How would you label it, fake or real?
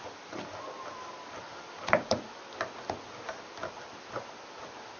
real